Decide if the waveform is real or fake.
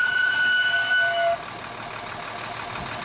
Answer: real